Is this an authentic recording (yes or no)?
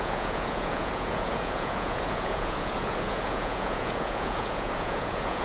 no